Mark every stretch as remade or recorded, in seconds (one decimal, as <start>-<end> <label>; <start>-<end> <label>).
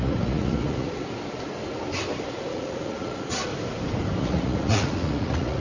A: 0.0-1.0 remade; 1.0-2.5 recorded; 2.5-3.5 remade; 3.5-4.2 recorded; 4.2-5.6 remade